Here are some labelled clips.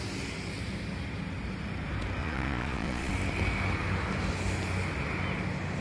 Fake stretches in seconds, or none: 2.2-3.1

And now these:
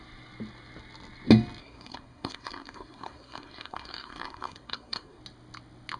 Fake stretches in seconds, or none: 1.6-5.2

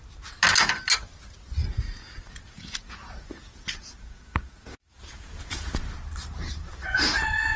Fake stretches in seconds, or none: 1.6-5.7; 6.8-7.6